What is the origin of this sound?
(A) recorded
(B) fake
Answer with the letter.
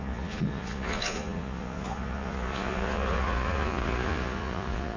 B